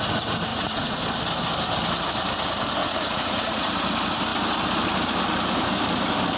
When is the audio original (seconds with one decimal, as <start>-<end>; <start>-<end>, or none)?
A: 0.0-0.5; 1.0-2.8; 3.7-6.4